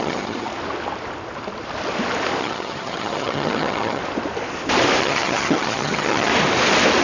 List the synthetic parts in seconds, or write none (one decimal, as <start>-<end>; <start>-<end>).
0.0-0.5; 2.4-4.0; 5.0-6.3